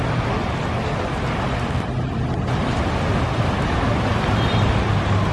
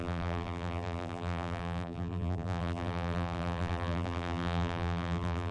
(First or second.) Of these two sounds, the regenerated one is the second